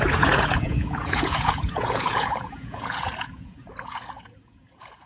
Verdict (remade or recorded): remade